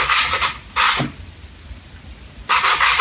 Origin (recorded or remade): recorded